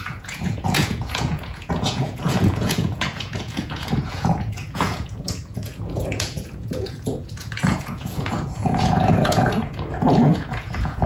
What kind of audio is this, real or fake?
fake